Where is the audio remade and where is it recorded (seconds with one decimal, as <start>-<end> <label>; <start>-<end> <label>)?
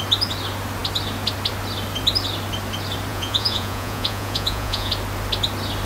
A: 0.0-3.1 recorded; 3.1-4.9 remade; 4.9-5.9 recorded